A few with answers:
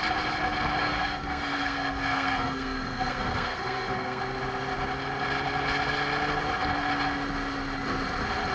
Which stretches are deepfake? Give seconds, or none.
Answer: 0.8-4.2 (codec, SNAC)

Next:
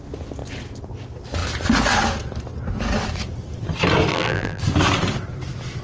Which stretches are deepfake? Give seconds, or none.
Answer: 4.1-4.6 (vocoder, BigVGAN v2)

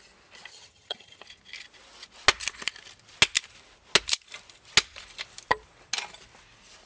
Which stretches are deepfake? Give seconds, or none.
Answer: 0.5-1.2 (vocoder, HiFi-GAN)

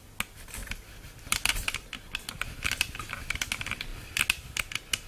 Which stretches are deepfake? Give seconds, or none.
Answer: none

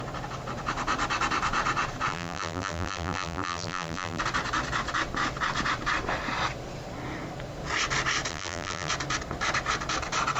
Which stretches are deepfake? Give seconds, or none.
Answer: 2.1-4.2 (vocoder, BigVGAN v2); 8.3-8.9

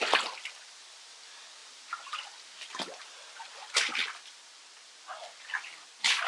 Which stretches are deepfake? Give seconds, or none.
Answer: none

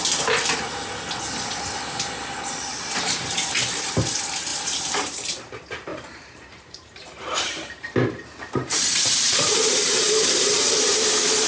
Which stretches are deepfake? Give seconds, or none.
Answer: 4.5-5.3 (vocoder, BigVGAN v2); 5.9-11.1

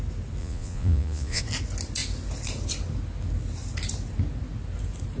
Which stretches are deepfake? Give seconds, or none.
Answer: 0.4-1.4 (vocoder, Vocos)